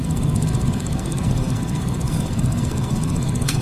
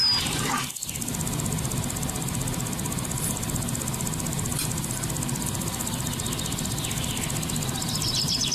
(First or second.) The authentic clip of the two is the second